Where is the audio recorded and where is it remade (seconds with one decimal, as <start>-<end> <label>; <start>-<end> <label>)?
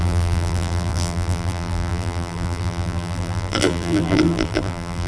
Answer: 0.0-5.1 remade